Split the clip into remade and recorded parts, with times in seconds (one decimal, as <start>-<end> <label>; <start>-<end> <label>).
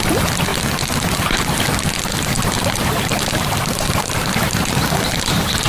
0.0-5.7 recorded